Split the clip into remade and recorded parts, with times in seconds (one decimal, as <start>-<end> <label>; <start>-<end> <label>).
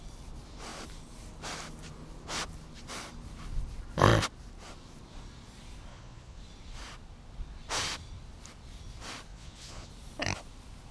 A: 0.0-5.9 recorded; 5.9-6.4 remade; 6.4-9.3 recorded; 9.3-9.9 remade; 9.9-10.9 recorded